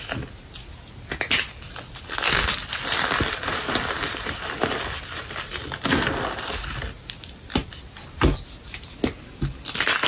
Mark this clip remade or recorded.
recorded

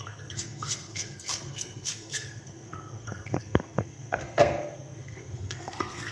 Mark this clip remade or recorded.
remade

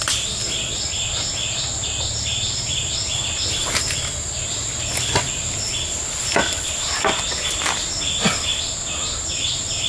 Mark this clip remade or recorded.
recorded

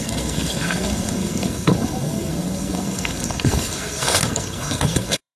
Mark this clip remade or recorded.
remade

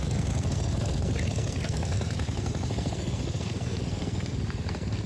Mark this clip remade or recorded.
remade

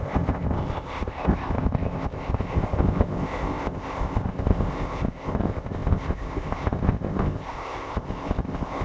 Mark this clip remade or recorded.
remade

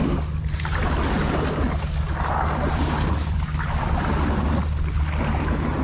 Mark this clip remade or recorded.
recorded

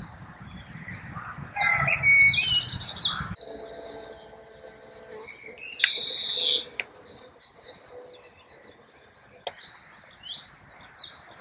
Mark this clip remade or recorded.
recorded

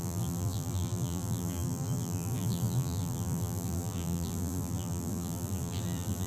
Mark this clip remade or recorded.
remade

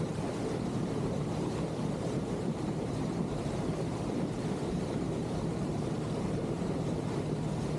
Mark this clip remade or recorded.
remade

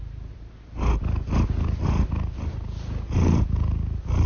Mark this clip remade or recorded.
recorded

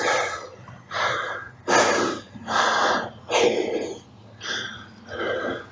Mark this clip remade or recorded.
recorded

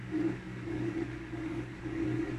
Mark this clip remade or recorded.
remade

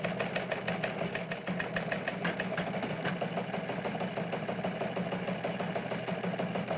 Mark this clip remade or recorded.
recorded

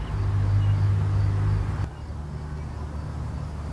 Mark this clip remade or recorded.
recorded